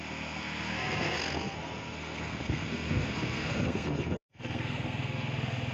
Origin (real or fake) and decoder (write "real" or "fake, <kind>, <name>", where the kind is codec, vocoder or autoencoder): fake, codec, SNAC